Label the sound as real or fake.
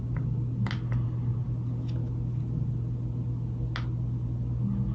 real